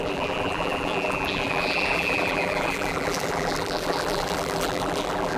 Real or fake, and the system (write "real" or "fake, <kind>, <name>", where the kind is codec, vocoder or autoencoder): fake, vocoder, BigVGAN v2